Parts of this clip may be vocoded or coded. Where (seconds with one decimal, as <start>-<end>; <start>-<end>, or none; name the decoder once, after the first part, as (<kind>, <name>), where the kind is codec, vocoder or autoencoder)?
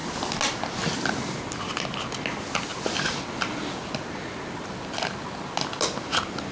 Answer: none